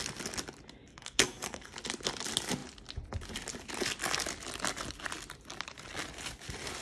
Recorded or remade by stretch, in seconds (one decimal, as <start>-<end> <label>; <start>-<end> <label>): 0.0-0.9 recorded; 0.9-1.7 remade; 1.7-6.8 recorded